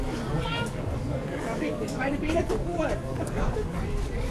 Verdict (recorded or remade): remade